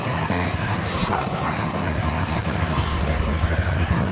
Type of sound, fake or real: fake